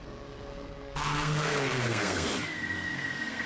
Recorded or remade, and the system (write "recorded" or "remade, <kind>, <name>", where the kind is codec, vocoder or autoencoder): remade, codec, SNAC